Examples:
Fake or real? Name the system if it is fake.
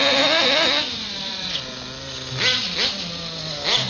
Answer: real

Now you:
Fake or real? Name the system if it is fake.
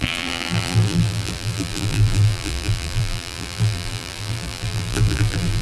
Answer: fake, vocoder, BigVGAN v2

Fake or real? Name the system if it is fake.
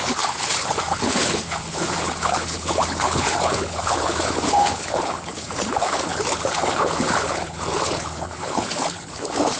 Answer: fake, codec, HILCodec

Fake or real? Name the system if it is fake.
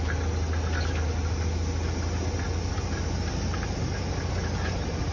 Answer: real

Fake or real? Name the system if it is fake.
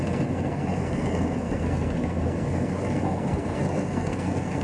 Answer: fake, codec, SNAC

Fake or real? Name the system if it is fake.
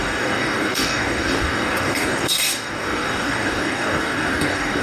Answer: fake, codec, DAC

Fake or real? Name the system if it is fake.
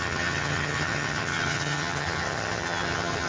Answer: fake, vocoder, HiFi-GAN